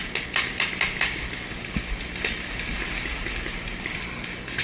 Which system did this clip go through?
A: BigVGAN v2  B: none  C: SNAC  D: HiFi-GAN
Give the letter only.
B